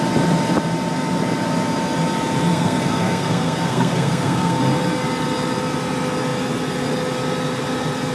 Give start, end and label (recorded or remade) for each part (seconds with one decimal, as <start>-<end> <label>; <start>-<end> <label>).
0.0-2.5 recorded; 2.5-4.6 remade; 4.6-8.1 recorded